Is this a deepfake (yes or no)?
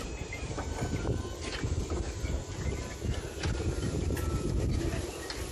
no